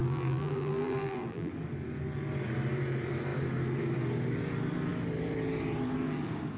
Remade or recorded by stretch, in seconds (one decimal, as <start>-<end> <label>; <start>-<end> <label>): 0.0-1.5 remade; 1.5-6.6 recorded